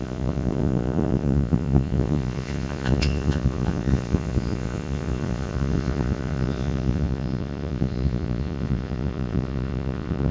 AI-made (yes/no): yes